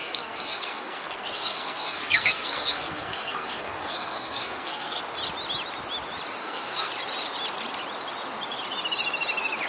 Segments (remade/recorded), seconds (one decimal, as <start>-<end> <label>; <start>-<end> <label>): 0.0-5.0 remade; 5.0-6.4 recorded; 6.4-6.9 remade; 6.9-9.7 recorded